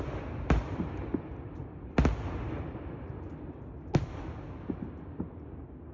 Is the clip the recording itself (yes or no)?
yes